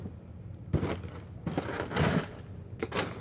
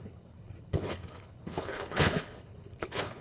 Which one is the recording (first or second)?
first